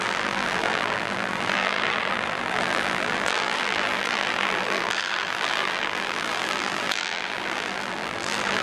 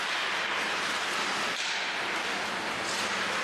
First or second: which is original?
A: second